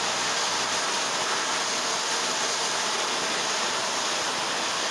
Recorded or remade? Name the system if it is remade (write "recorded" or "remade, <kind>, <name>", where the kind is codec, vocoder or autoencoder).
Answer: recorded